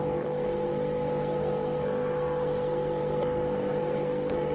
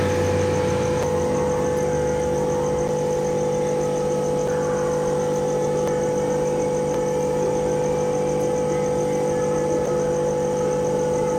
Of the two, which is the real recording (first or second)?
second